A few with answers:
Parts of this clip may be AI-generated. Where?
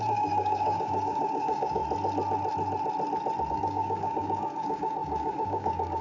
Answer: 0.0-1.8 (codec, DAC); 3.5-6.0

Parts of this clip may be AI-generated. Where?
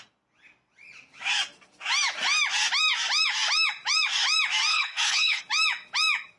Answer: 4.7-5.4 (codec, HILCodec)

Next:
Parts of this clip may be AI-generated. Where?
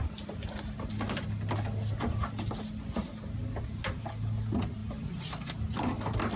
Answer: 4.8-5.3 (vocoder, BigVGAN v2)